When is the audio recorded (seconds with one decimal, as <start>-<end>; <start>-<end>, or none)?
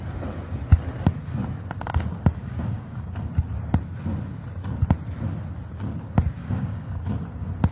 0.0-2.4; 3.3-6.4; 7.0-7.7